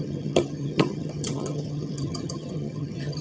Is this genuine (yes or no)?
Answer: no